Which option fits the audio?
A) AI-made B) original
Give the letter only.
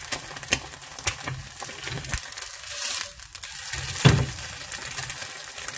B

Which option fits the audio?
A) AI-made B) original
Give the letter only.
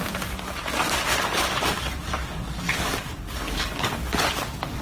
A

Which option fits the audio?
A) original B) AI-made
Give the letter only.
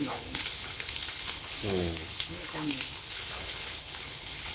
B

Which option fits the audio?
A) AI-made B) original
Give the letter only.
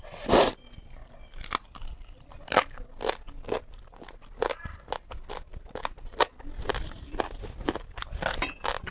B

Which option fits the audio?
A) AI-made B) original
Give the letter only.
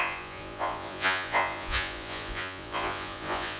A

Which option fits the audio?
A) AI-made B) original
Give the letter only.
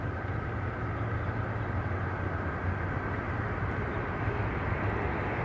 A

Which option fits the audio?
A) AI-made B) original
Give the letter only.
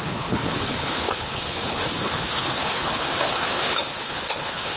A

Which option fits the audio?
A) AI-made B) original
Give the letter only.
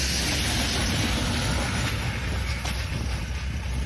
B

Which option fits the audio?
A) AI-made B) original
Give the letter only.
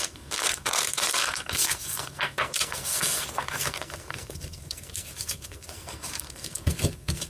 A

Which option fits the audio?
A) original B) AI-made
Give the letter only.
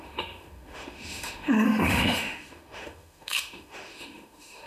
B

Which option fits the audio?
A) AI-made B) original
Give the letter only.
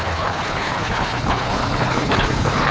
A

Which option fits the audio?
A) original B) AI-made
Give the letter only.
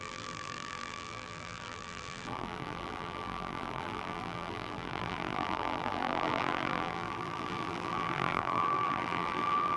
B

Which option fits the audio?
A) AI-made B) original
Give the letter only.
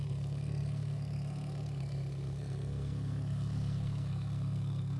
A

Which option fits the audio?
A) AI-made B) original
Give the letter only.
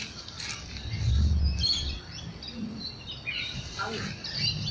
B